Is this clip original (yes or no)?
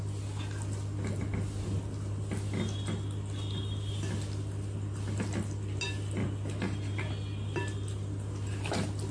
yes